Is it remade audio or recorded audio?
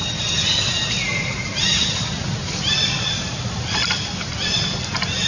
recorded